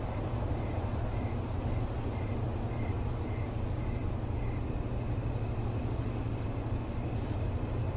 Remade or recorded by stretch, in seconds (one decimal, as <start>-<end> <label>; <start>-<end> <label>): 0.0-8.0 recorded